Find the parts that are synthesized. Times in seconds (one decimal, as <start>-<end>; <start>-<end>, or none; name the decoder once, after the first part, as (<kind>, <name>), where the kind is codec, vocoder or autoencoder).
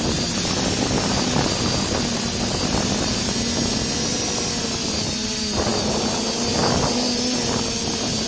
none